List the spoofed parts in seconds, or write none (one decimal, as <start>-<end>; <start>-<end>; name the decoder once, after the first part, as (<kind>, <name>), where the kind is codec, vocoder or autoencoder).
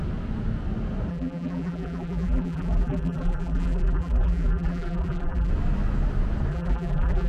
1.1-5.5 (vocoder, BigVGAN v2); 6.5-7.3